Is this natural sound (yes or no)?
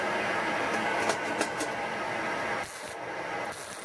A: yes